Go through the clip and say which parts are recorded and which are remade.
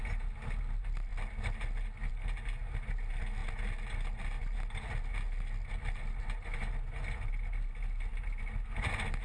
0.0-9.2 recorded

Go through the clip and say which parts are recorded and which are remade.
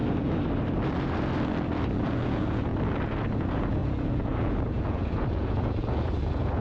0.0-1.9 recorded; 1.9-2.7 remade; 2.7-3.3 recorded; 3.3-6.6 remade